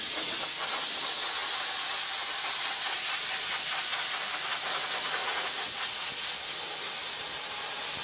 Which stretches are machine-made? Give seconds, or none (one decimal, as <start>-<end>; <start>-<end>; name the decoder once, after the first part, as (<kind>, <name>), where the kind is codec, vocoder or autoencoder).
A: 5.2-6.1 (vocoder, Vocos)

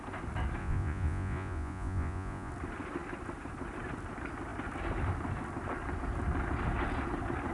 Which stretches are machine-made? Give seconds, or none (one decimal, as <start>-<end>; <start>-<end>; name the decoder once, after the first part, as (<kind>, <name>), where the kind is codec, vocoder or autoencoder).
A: 0.6-2.5 (vocoder, Vocos)

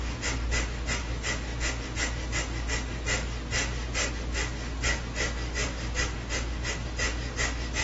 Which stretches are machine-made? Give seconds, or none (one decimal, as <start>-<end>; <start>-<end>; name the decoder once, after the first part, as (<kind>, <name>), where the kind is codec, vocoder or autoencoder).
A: none